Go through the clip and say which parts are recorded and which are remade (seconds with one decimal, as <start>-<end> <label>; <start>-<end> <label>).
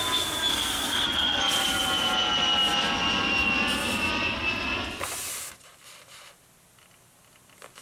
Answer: 0.0-0.5 recorded; 0.5-1.4 remade; 1.4-7.8 recorded